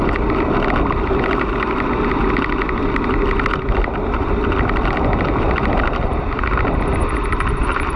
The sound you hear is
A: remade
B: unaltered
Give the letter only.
B